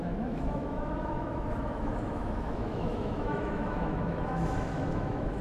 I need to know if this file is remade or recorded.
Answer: remade